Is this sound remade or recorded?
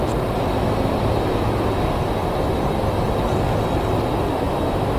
recorded